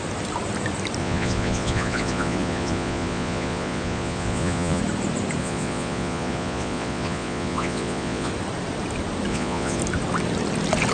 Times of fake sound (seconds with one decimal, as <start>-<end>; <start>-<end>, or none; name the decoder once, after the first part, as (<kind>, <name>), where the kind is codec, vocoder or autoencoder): 1.0-4.8 (vocoder, Vocos); 5.4-8.3; 9.3-9.8